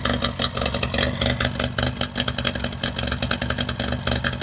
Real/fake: real